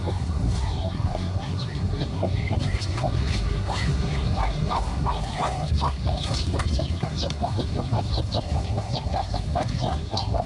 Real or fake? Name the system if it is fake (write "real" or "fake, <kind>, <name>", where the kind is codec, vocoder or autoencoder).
fake, codec, SNAC